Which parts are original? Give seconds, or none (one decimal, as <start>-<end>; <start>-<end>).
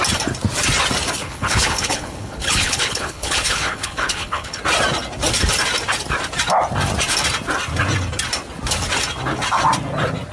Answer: 0.0-1.2; 4.6-10.3